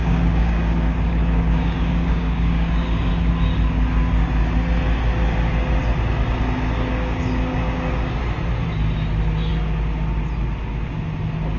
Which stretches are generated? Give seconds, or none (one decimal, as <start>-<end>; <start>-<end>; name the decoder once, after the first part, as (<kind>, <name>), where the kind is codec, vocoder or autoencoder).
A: 0.0-3.1 (codec, DAC); 6.9-8.2